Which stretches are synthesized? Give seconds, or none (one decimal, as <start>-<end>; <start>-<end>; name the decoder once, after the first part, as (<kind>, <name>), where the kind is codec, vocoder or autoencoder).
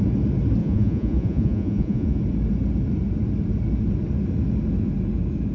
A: 0.6-2.2 (vocoder, Vocos)